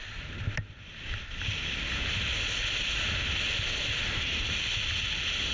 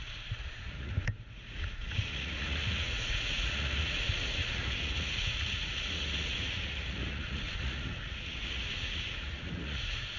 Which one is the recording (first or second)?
first